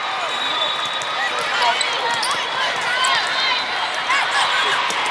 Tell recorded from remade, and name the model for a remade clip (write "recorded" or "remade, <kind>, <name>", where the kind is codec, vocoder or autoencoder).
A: recorded